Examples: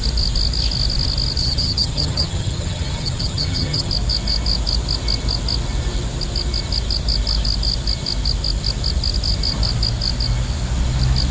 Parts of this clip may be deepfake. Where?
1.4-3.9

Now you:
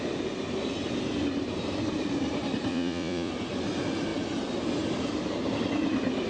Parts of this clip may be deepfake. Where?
2.7-3.3

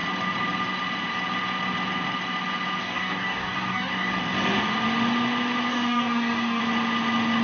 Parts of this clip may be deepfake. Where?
2.8-4.2; 5.7-6.6

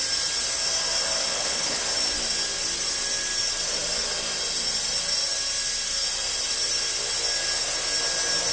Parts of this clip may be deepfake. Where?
1.3-1.8

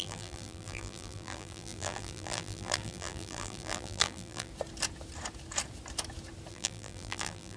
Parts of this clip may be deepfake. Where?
0.0-4.5; 6.5-7.6

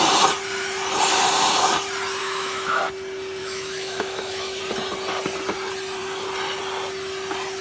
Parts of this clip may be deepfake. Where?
2.2-2.8; 3.4-4.6